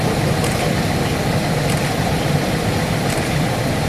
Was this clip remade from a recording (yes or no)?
no